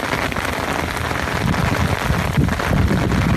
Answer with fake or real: real